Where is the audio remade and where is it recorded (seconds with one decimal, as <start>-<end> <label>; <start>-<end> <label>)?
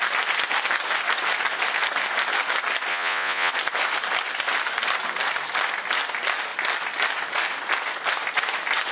0.0-2.9 recorded; 2.9-3.5 remade; 3.5-8.9 recorded